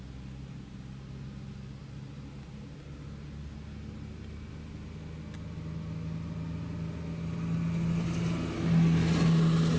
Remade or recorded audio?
recorded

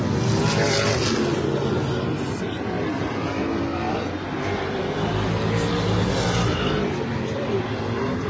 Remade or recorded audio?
recorded